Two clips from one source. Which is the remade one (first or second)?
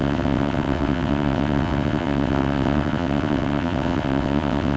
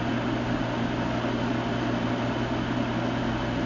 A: first